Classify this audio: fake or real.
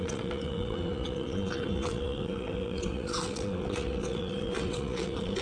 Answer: fake